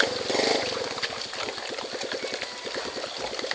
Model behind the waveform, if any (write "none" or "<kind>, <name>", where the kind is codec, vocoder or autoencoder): none